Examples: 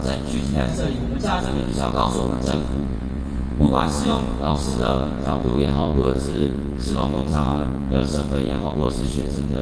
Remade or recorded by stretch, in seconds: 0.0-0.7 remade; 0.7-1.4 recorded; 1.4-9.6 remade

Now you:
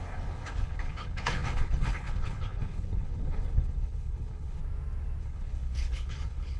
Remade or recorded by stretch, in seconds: 0.0-4.6 remade; 4.6-5.2 recorded; 5.2-6.6 remade

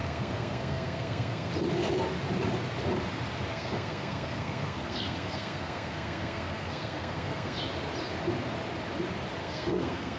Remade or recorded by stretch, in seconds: 0.0-1.5 remade; 1.5-3.5 recorded; 3.5-7.6 remade; 7.6-9.4 recorded; 9.4-10.2 remade

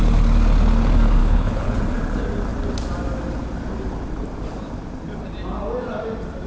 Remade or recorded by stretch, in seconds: 0.0-1.2 recorded; 1.2-1.8 remade; 1.8-6.5 recorded

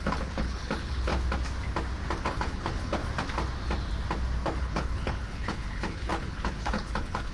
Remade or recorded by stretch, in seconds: 0.0-1.1 remade; 1.1-2.2 recorded; 2.2-3.0 remade; 3.0-4.6 recorded; 4.6-7.3 remade